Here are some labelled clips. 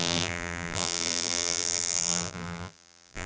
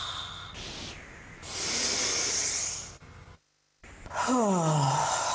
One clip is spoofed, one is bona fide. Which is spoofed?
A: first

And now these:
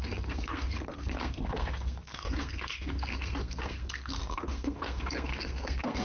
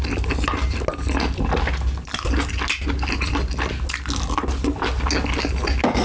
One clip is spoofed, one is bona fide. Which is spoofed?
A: first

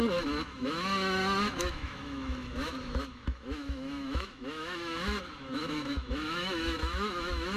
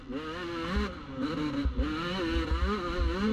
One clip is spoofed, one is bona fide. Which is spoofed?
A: first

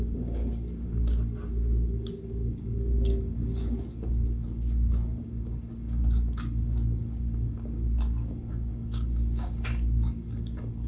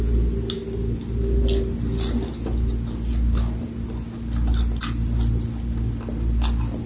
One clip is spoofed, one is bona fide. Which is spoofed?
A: first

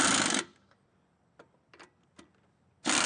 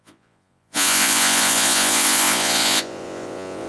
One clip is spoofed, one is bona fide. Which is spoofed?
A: second